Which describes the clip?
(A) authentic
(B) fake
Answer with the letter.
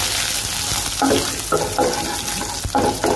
A